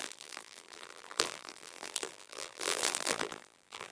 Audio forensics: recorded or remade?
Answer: remade